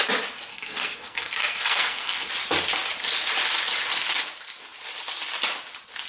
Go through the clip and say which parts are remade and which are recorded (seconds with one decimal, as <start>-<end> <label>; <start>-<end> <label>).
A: 0.0-0.5 recorded; 0.5-2.3 remade; 2.3-6.1 recorded